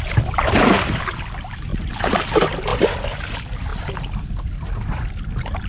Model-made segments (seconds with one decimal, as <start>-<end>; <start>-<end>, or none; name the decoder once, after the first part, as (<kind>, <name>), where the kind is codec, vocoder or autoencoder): 1.7-2.3 (vocoder, BigVGAN v2)